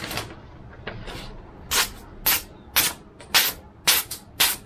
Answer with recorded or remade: recorded